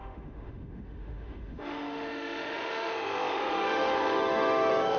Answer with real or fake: fake